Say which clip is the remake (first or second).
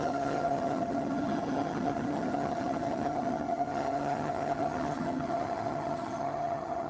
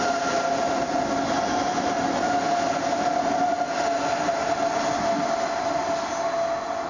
first